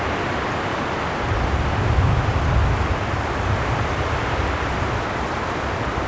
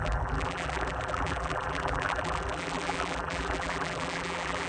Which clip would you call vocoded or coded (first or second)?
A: second